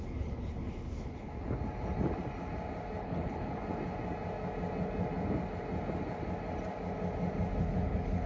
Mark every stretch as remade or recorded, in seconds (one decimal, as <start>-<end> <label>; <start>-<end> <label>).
0.0-1.3 remade; 1.3-3.0 recorded; 3.0-3.6 remade; 3.6-7.6 recorded; 7.6-8.3 remade